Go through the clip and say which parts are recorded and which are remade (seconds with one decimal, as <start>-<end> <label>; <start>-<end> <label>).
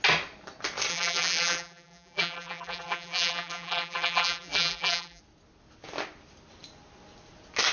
0.0-0.9 recorded; 0.9-5.2 remade; 5.2-7.7 recorded